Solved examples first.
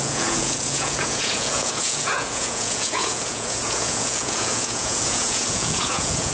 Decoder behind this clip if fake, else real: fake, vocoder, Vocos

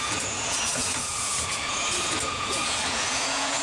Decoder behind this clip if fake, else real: fake, vocoder, Vocos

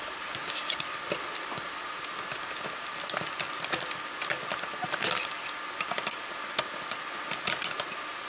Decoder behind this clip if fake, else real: real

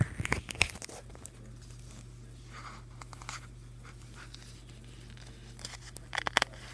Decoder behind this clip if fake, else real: real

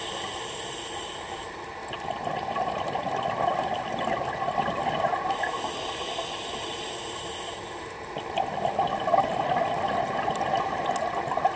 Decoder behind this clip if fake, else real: real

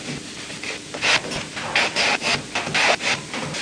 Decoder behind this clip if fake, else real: real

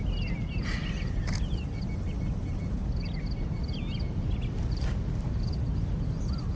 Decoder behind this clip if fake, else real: real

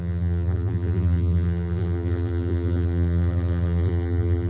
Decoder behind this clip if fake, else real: fake, vocoder, BigVGAN v2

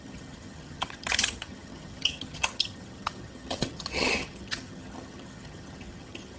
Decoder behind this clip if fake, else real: fake, vocoder, HiFi-GAN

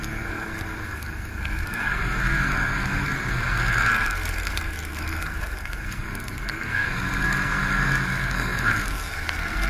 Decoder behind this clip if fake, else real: fake, codec, SNAC